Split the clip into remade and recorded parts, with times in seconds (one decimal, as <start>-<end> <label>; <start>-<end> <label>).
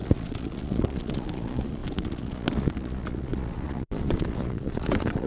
0.0-5.3 remade